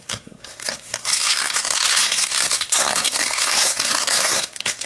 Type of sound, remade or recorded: remade